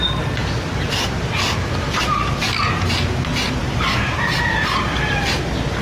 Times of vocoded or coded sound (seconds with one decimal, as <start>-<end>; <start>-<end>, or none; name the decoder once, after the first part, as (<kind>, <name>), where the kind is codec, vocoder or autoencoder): none

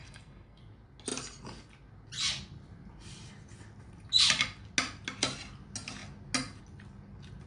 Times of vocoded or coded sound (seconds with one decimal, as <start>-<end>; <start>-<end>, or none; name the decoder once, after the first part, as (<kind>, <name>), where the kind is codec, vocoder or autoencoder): 0.0-0.6 (codec, SNAC)

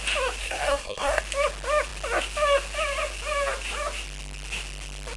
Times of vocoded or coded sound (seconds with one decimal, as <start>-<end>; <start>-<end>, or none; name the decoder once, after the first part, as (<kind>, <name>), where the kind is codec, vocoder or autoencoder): 0.4-1.2 (codec, SNAC)

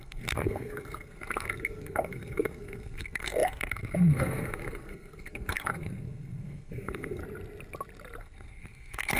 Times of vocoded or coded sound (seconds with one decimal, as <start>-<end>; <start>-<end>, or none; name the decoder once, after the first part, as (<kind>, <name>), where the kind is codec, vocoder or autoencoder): 0.0-7.2 (codec, SNAC); 8.2-9.2

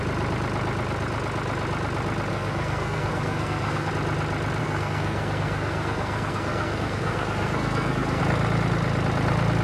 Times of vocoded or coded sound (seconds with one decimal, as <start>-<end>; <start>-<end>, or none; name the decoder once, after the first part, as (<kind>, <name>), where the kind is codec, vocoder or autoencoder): 2.3-3.9 (codec, SNAC); 4.6-8.2

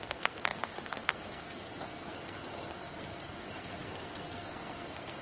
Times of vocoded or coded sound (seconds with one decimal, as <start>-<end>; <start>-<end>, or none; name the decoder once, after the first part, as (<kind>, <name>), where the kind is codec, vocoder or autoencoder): 0.0-5.2 (codec, SNAC)